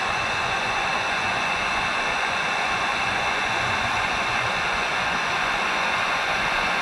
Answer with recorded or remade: remade